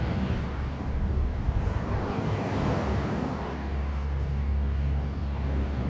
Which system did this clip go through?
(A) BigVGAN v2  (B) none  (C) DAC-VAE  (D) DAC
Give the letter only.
D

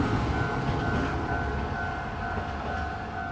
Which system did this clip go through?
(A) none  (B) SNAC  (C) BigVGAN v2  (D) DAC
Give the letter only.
A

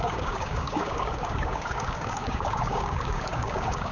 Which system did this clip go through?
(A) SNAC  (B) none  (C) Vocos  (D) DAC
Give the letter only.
D